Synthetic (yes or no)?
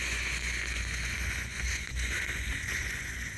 yes